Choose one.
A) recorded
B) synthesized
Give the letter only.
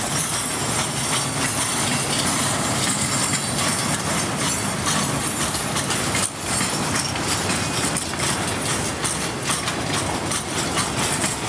A